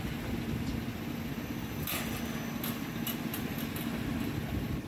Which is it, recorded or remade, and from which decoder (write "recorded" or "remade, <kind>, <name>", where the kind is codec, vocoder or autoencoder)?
recorded